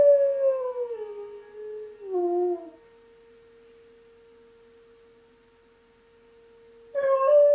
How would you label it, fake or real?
real